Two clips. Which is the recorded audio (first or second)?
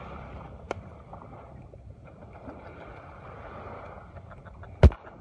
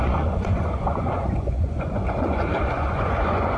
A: first